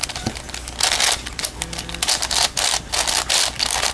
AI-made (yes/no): no